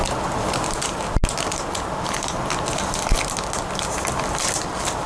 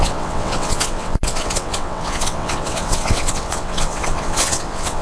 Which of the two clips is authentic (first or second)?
first